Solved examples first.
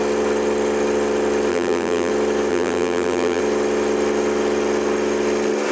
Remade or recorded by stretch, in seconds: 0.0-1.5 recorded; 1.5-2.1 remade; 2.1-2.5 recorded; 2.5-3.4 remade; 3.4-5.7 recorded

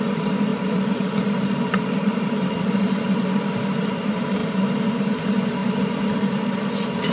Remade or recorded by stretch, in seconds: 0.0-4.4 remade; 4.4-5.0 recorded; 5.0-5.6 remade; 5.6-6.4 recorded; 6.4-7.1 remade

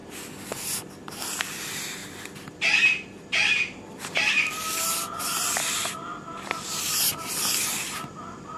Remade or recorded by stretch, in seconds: 0.0-1.3 recorded; 1.3-2.0 remade; 2.0-5.2 recorded; 5.2-6.1 remade; 6.1-7.1 recorded; 7.1-8.6 remade

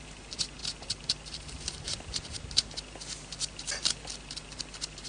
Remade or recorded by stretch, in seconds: 0.0-5.1 remade

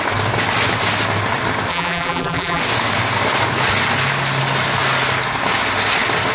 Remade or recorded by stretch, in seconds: 0.0-1.7 recorded; 1.7-2.6 remade; 2.6-6.3 recorded

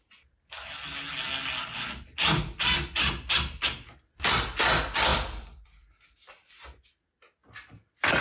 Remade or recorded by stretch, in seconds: 0.0-5.1 recorded; 5.1-5.9 remade; 5.9-7.4 recorded; 7.4-8.2 remade

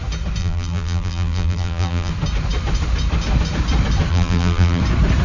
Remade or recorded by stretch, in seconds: 0.0-0.4 recorded; 0.4-2.1 remade; 2.1-4.1 recorded; 4.1-4.8 remade; 4.8-5.2 recorded

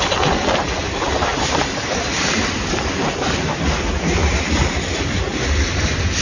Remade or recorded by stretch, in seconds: 0.0-1.3 recorded; 1.3-2.3 remade; 2.3-4.2 recorded; 4.2-5.0 remade; 5.0-6.2 recorded